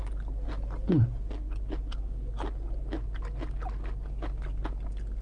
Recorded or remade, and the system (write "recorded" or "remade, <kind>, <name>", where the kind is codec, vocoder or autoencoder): recorded